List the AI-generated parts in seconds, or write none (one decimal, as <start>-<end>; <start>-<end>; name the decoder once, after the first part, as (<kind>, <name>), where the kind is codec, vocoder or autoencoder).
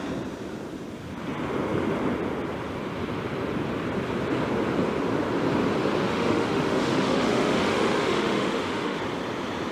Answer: 6.1-9.0 (autoencoder, DAC-VAE)